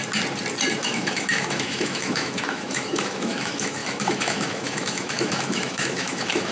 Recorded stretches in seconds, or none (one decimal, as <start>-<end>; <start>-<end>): 0.0-0.8